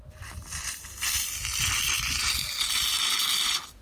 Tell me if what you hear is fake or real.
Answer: real